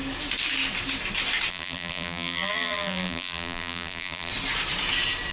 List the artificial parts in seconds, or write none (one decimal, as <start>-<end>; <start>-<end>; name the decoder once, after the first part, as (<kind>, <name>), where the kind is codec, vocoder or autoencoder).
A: 1.5-4.3 (vocoder, BigVGAN v2)